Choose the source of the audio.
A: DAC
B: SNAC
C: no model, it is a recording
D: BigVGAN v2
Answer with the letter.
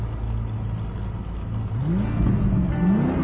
C